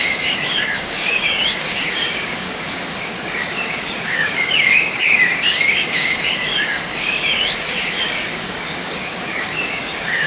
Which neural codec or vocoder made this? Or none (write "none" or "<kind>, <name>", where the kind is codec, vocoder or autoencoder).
codec, DAC